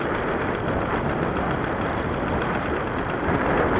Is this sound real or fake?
real